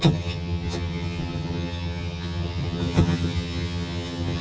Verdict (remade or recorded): remade